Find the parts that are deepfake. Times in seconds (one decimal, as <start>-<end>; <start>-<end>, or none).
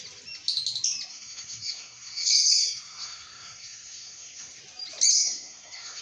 1.1-4.6; 5.1-6.0